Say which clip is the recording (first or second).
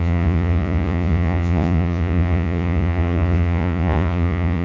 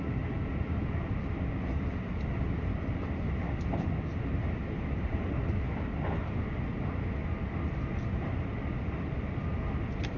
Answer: second